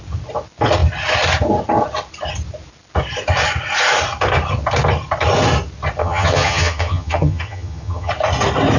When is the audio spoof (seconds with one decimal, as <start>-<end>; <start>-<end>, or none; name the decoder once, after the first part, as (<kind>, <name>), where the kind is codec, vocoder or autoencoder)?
6.0-8.1 (vocoder, HiFi-GAN)

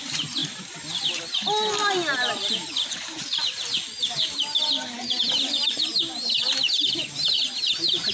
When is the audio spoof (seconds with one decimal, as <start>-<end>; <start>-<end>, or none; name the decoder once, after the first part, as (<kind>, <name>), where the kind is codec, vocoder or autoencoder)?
none

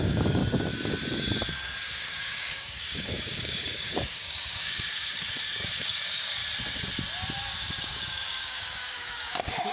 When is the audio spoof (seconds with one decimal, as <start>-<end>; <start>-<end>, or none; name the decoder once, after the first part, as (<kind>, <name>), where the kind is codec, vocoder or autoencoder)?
0.0-0.4 (codec, DAC); 1.5-6.4; 7.8-9.7

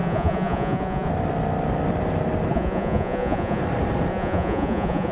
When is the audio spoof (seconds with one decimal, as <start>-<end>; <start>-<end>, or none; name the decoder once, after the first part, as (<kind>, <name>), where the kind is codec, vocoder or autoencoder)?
0.0-1.1 (vocoder, Vocos); 2.5-3.6; 4.1-5.1

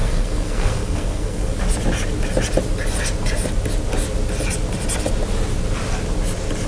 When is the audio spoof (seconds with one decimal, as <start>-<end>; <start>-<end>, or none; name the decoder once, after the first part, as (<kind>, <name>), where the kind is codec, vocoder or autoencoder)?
0.0-1.6 (codec, SNAC)

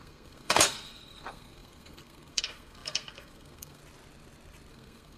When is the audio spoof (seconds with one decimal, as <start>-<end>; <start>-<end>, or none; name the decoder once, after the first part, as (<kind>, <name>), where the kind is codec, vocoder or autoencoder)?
0.0-3.8 (codec, SNAC); 4.7-5.2

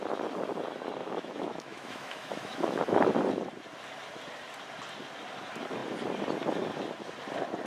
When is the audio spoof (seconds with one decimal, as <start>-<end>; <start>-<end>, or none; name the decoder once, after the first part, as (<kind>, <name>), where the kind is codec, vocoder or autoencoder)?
1.0-2.8 (autoencoder, DAC-VAE)